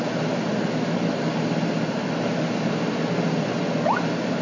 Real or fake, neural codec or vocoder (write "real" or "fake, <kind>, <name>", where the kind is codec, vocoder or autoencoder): real